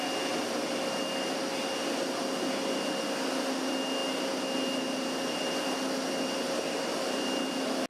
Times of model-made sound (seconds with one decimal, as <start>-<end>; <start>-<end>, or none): none